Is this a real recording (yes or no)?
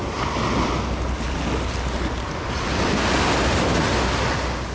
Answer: yes